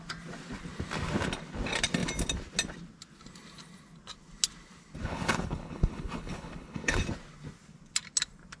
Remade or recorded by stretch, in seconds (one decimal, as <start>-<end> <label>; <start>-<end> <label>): 0.0-5.0 recorded; 5.0-7.0 remade; 7.0-8.6 recorded